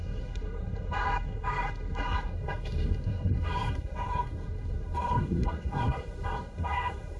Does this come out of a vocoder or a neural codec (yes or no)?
yes